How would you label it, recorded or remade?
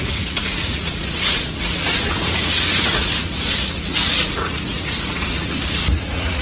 remade